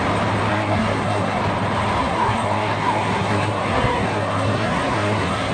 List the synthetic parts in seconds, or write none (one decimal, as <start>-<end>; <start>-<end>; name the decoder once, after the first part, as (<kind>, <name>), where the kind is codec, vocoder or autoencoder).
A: 0.5-1.4 (codec, SNAC); 2.0-5.5